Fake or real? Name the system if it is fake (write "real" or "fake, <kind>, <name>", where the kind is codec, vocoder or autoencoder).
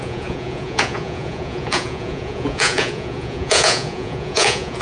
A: fake, vocoder, Vocos